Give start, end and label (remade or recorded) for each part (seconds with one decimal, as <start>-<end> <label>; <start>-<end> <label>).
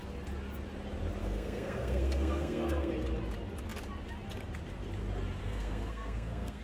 0.0-1.2 recorded; 1.2-2.9 remade; 2.9-5.4 recorded; 5.4-6.6 remade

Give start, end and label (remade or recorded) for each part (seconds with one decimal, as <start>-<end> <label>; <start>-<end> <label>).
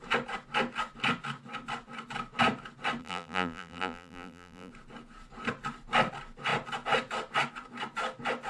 0.0-3.0 recorded; 3.0-4.7 remade; 4.7-8.5 recorded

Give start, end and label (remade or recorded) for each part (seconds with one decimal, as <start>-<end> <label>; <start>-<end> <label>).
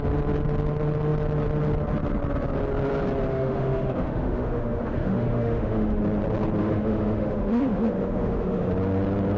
0.0-3.3 recorded; 3.3-6.0 remade; 6.0-6.6 recorded; 6.6-8.7 remade; 8.7-9.4 recorded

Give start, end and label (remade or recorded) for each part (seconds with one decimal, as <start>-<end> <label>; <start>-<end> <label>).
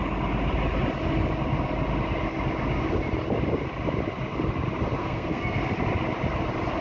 0.0-5.0 recorded; 5.0-5.6 remade; 5.6-6.8 recorded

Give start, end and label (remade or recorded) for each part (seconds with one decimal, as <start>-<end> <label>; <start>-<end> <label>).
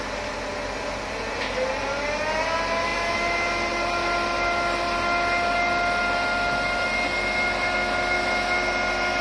0.0-9.2 recorded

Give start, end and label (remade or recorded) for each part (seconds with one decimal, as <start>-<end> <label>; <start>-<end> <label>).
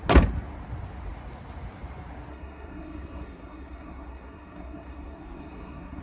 0.0-2.3 recorded; 2.3-6.0 remade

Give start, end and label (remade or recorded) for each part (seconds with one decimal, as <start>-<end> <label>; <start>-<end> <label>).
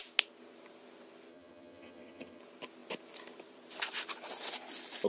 0.0-1.3 recorded; 1.3-2.4 remade; 2.4-5.1 recorded